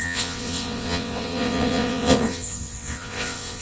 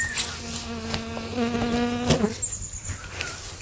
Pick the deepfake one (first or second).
first